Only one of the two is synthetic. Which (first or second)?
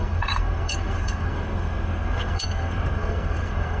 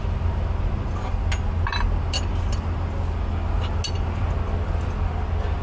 first